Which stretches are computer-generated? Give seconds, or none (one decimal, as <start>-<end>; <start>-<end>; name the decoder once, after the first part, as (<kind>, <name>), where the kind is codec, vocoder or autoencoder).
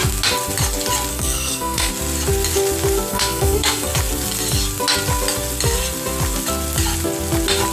1.1-1.9 (codec, SNAC); 3.1-3.9